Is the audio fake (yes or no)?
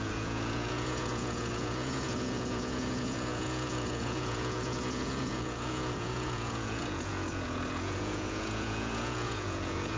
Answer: yes